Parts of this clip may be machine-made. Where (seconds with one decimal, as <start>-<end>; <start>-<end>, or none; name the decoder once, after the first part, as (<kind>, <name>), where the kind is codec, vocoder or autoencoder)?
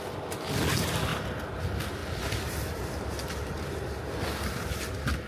none